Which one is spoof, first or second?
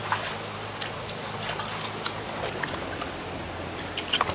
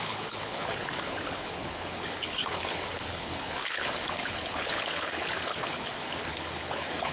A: second